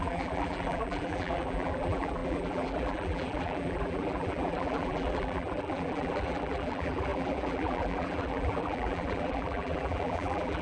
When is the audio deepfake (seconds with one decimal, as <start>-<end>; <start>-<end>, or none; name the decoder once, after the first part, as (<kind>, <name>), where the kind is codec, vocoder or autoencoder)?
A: 0.0-10.6 (vocoder, BigVGAN v2)